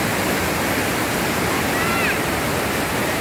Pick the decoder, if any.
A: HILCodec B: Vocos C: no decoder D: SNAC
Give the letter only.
C